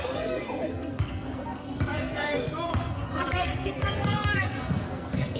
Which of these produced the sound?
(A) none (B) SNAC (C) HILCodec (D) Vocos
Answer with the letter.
B